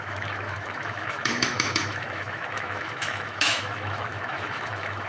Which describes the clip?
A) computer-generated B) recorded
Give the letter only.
A